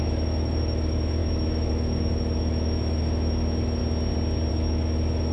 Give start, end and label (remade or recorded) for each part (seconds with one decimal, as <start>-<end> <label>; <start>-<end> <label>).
0.0-3.8 remade; 3.8-4.5 recorded; 4.5-5.3 remade